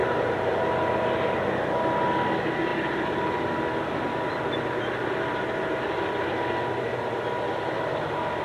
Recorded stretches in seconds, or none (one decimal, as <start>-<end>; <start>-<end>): 0.6-8.4